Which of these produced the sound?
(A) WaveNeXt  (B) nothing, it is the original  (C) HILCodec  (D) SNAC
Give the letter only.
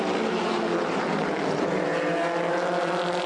B